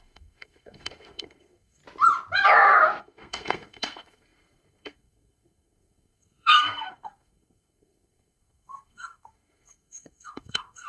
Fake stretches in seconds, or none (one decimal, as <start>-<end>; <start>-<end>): 0.0-1.8; 3.0-10.9